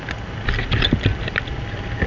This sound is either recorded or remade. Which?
recorded